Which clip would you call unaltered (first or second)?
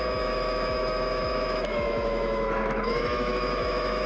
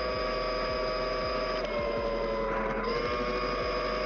second